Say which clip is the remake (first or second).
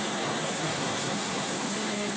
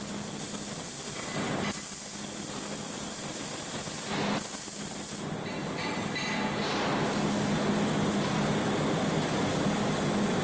first